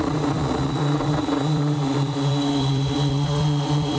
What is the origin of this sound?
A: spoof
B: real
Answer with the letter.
A